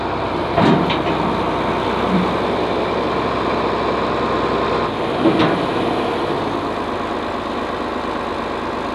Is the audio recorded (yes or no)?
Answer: yes